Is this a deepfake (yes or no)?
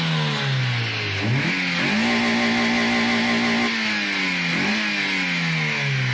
no